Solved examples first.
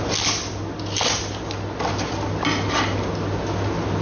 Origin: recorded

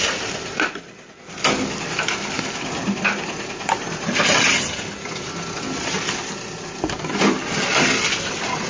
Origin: recorded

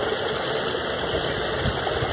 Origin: recorded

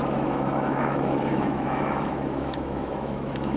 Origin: remade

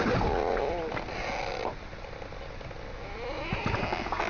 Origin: recorded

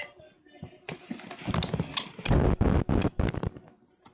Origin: recorded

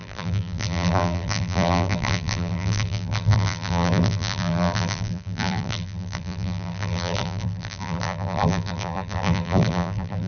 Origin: remade